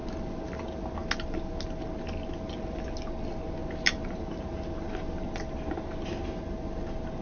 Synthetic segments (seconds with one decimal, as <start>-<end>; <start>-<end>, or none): none